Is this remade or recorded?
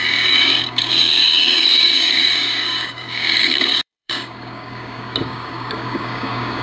remade